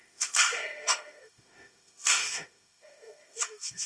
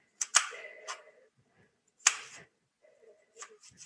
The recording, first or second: second